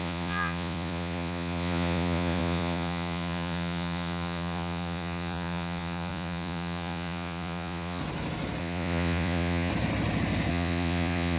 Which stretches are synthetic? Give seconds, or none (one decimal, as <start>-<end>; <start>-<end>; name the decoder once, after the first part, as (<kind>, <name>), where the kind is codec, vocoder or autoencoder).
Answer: 0.0-8.0 (vocoder, Vocos); 8.6-9.7; 10.5-11.4